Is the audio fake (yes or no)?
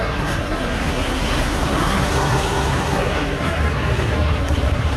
yes